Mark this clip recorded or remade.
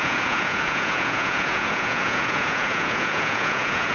remade